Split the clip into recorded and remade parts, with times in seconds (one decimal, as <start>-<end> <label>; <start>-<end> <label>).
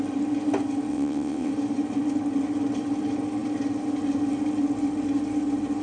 0.0-0.9 recorded; 0.9-1.5 remade; 1.5-5.8 recorded